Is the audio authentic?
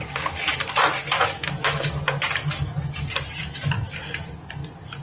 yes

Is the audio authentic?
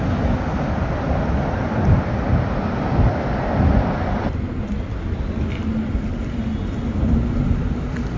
yes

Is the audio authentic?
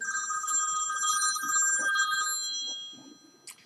yes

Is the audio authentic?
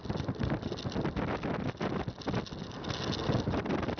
yes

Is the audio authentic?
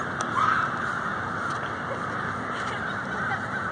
yes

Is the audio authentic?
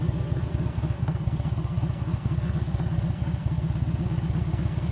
no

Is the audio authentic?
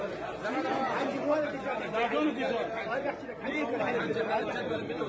yes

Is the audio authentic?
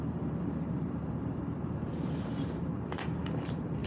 no